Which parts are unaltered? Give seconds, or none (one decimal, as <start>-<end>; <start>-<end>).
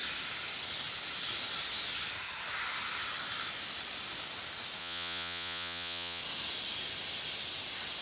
0.0-4.8; 6.2-8.0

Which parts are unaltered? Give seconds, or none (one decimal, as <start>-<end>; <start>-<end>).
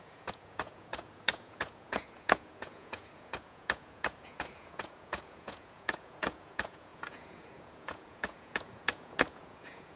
none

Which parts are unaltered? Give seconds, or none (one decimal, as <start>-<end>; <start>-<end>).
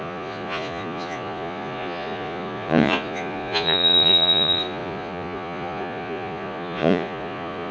none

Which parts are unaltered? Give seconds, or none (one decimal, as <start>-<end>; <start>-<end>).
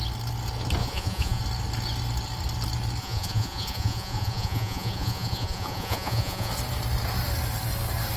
0.0-0.8; 1.4-3.0; 6.5-8.2